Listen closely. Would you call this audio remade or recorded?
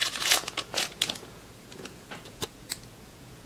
remade